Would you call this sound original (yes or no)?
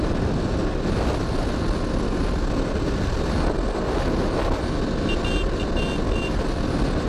yes